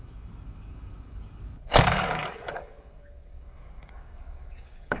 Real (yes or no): no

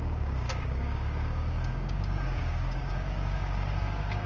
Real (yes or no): no